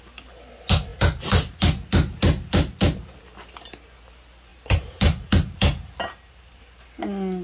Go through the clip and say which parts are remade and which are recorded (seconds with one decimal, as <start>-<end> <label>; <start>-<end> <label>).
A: 0.0-4.5 recorded; 4.5-6.6 remade; 6.6-7.4 recorded